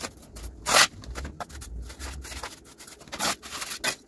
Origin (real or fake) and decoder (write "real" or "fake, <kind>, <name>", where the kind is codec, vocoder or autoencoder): real